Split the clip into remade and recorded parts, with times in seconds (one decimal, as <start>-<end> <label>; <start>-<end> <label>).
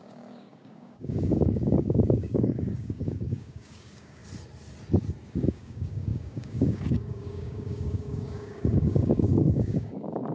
0.0-4.2 remade; 4.2-5.3 recorded; 5.3-10.3 remade